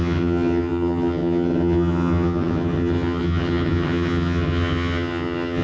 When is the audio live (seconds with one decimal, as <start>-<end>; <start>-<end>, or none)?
none

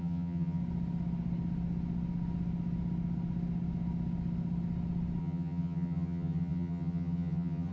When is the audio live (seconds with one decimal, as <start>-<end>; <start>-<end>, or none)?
0.6-5.2

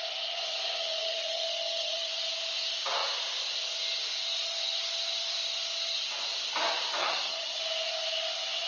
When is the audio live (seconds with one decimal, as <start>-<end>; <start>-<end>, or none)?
0.0-0.8; 2.1-7.0; 7.6-8.7

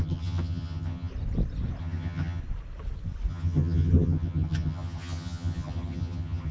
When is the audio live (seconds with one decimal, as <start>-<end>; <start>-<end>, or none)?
1.1-1.8; 2.4-3.3

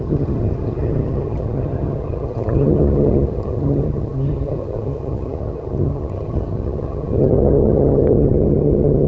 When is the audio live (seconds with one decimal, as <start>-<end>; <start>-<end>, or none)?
none

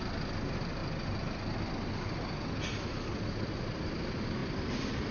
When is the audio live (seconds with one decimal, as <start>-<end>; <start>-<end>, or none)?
0.0-5.1